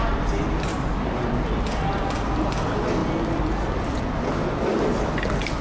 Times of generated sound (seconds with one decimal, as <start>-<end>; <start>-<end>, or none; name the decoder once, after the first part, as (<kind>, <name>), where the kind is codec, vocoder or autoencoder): none

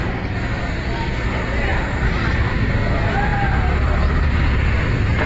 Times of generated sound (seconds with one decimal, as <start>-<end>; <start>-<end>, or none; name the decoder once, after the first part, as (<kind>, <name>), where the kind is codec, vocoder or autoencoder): 1.7-2.7 (vocoder, BigVGAN v2); 3.3-5.3

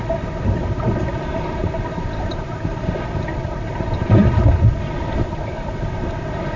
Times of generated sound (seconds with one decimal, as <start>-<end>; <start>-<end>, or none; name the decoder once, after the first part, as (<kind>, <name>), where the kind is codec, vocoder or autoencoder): 1.0-4.4 (vocoder, BigVGAN v2)

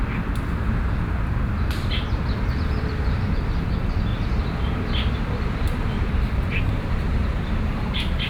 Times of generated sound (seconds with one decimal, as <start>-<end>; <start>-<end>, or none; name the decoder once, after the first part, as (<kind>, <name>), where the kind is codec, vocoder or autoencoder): 4.1-7.8 (vocoder, BigVGAN v2)

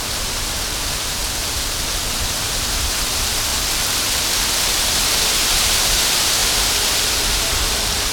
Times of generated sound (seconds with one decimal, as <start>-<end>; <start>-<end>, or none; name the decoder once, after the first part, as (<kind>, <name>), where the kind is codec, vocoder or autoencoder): 0.0-1.2 (vocoder, BigVGAN v2); 2.1-3.5; 4.8-6.4; 7.3-8.1

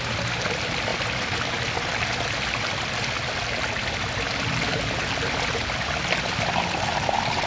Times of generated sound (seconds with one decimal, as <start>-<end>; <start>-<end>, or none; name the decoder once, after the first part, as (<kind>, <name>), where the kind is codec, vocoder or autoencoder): none

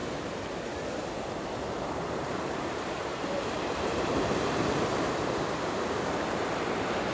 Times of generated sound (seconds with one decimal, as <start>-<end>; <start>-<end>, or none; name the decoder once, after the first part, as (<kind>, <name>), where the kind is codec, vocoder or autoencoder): 1.2-7.1 (vocoder, BigVGAN v2)